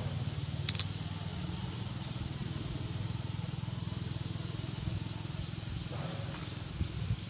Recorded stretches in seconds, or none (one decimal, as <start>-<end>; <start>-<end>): 0.0-1.3; 1.8-7.3